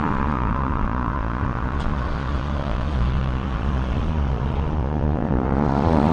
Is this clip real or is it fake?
fake